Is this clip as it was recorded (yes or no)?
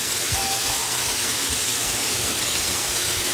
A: no